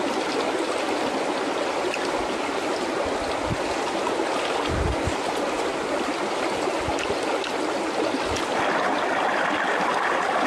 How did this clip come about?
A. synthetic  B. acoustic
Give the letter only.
B